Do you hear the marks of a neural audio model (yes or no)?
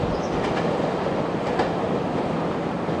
no